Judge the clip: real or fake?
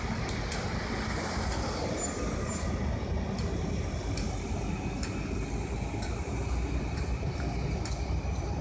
real